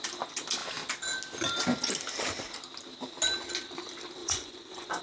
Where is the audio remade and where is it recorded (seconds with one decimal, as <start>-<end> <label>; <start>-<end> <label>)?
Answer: 0.0-4.2 recorded; 4.2-5.0 remade